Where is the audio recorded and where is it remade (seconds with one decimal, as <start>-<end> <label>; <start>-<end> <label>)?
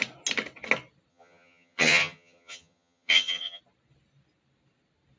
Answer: 0.0-1.1 recorded; 1.1-3.6 remade; 3.6-5.2 recorded